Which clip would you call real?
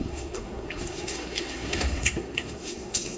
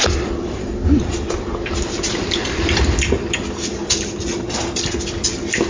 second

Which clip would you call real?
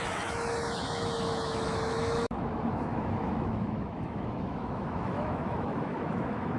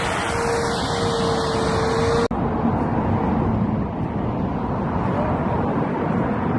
second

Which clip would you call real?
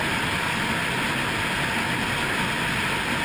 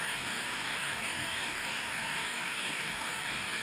first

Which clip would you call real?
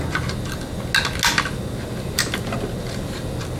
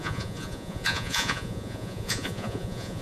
first